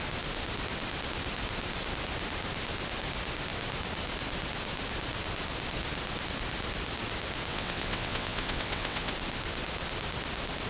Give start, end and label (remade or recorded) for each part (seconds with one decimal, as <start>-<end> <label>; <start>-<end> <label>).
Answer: 0.0-7.5 recorded; 7.5-9.1 remade; 9.1-10.7 recorded

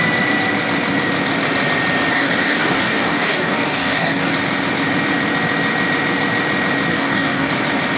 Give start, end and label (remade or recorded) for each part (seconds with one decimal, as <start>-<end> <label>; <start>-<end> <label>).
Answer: 0.0-2.1 recorded; 2.1-4.3 remade; 4.3-6.9 recorded; 6.9-7.5 remade; 7.5-8.0 recorded

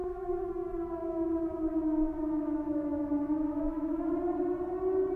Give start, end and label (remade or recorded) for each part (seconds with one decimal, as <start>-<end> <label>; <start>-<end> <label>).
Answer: 0.0-0.5 remade; 0.5-1.0 recorded; 1.0-4.1 remade; 4.1-5.2 recorded

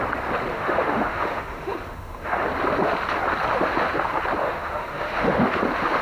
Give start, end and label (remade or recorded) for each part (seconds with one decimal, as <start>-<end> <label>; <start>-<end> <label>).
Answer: 0.0-0.5 recorded; 0.5-2.4 remade; 2.4-4.4 recorded; 4.4-5.6 remade; 5.6-6.0 recorded

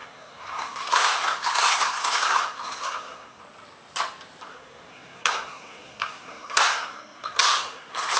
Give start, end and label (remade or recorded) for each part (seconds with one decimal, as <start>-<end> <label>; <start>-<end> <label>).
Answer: 0.0-3.4 remade; 3.4-4.5 recorded; 4.5-8.2 remade

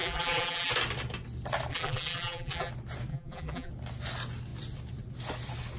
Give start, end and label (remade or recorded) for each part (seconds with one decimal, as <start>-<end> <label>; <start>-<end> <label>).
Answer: 0.0-0.7 remade; 0.7-1.7 recorded; 1.7-2.7 remade; 2.7-3.1 recorded; 3.1-3.7 remade; 3.7-5.8 recorded

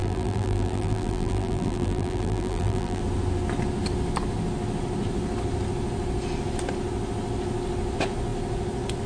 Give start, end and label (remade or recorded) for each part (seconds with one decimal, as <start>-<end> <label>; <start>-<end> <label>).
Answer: 0.0-3.0 remade; 3.0-9.1 recorded